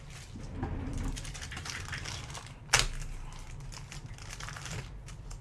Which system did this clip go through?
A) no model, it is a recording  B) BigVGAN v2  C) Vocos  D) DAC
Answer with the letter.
A